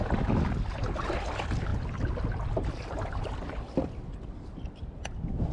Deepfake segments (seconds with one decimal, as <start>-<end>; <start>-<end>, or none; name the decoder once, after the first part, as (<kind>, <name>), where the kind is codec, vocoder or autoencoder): none